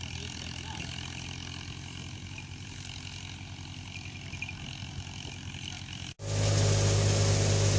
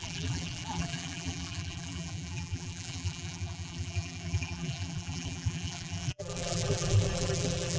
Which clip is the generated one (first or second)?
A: second